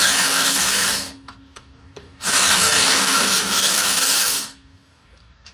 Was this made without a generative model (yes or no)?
no